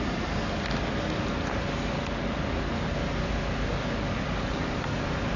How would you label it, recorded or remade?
recorded